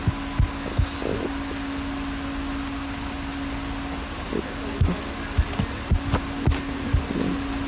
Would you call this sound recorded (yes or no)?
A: yes